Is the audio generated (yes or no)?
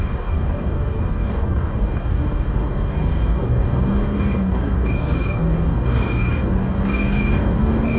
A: yes